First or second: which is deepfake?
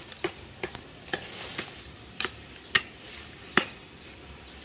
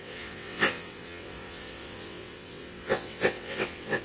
second